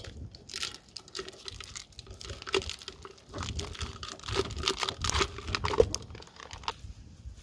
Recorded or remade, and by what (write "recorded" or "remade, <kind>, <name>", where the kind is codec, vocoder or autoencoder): recorded